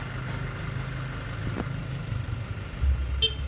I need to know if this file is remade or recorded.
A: recorded